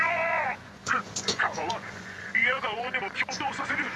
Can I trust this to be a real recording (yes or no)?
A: no